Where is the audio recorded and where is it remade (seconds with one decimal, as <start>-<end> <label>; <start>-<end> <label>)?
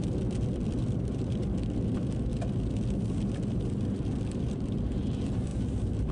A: 0.0-2.3 remade; 2.3-3.7 recorded; 3.7-5.5 remade; 5.5-6.1 recorded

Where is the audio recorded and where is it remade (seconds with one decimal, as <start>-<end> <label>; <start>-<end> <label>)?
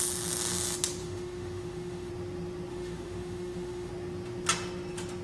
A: 0.0-1.0 recorded; 1.0-2.1 remade; 2.1-2.7 recorded; 2.7-3.9 remade; 3.9-5.2 recorded